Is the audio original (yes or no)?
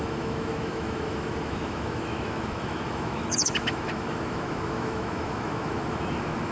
no